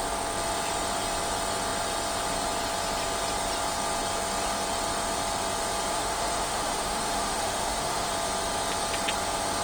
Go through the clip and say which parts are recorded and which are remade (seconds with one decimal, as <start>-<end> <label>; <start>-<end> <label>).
0.0-5.9 recorded; 5.9-8.1 remade; 8.1-9.6 recorded